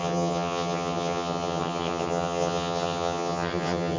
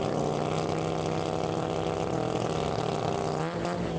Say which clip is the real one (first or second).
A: second